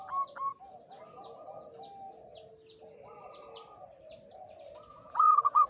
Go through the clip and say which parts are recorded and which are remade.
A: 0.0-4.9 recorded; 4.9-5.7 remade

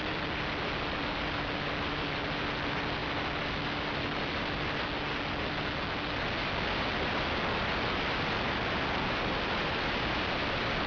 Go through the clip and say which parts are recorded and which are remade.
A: 0.0-10.9 recorded